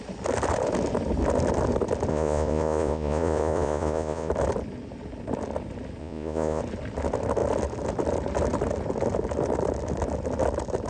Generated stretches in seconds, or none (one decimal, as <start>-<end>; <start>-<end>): 2.1-4.3; 6.0-6.6